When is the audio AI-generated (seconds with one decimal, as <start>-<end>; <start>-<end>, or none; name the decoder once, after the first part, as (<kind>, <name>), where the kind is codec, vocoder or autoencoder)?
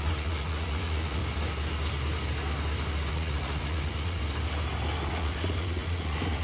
0.0-1.2 (vocoder, Vocos); 3.1-4.2; 5.1-6.4